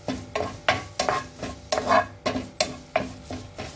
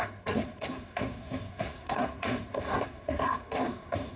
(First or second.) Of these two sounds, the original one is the first